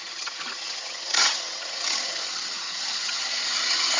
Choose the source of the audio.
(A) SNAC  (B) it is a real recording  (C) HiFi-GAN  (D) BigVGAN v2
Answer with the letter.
C